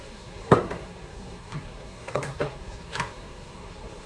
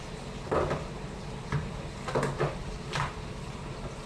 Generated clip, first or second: first